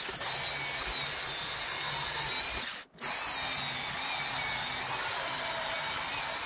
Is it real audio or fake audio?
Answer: real